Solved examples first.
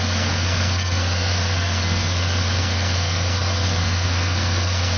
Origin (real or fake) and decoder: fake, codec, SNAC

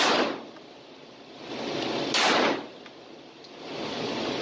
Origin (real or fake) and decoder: real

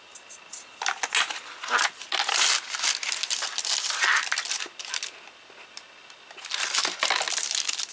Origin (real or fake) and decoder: real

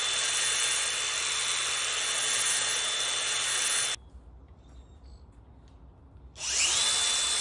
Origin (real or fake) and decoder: real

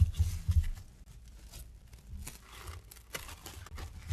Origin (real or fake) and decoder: real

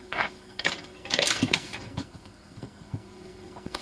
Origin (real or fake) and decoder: fake, codec, SNAC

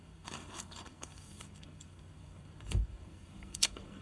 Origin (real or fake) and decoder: fake, codec, SNAC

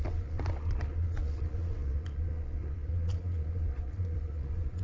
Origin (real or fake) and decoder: fake, vocoder, Vocos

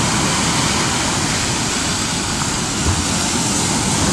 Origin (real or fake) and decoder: real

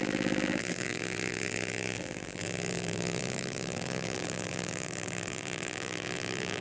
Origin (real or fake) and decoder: fake, vocoder, BigVGAN v2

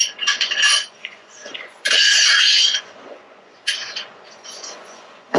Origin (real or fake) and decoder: fake, vocoder, Vocos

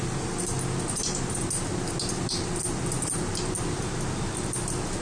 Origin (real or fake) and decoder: real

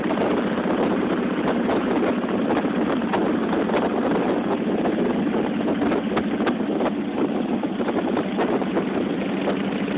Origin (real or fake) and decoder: real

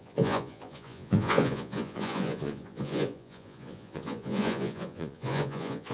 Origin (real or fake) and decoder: fake, vocoder, Vocos